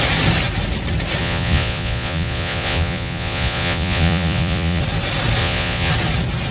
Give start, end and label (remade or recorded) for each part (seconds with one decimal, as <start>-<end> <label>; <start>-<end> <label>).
0.0-1.2 recorded; 1.2-4.8 remade; 4.8-5.4 recorded; 5.4-5.9 remade; 5.9-6.5 recorded